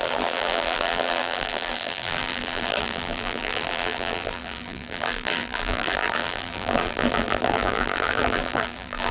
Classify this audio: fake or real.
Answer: fake